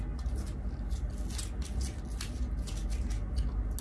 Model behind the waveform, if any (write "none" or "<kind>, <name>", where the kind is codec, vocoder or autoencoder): none